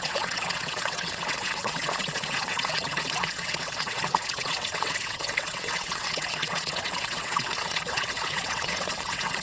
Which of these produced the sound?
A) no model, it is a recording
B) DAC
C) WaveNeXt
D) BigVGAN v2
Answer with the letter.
C